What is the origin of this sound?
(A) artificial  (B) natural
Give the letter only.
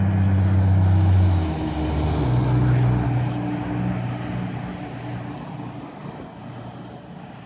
B